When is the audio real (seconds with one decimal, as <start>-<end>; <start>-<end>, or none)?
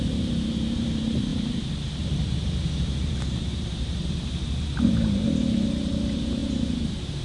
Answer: none